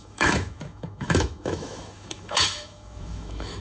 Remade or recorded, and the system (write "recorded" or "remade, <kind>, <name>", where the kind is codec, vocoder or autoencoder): remade, autoencoder, DAC-VAE